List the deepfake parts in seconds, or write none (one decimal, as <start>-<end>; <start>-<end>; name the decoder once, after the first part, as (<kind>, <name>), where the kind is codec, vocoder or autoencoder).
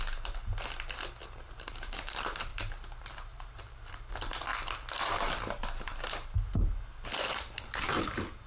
1.2-2.1 (vocoder, BigVGAN v2); 2.5-4.1